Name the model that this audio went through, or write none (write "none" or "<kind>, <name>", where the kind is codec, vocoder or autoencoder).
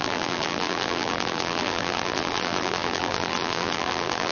vocoder, BigVGAN v2